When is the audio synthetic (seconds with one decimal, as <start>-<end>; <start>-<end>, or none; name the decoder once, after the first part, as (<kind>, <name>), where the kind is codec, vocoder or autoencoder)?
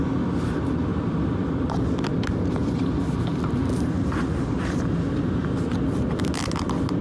0.9-1.9 (vocoder, BigVGAN v2); 2.6-6.2